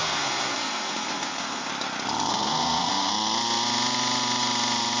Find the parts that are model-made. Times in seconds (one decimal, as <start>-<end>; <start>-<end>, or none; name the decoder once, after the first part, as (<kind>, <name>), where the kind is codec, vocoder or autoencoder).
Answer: 0.0-1.7 (codec, SNAC); 2.3-3.1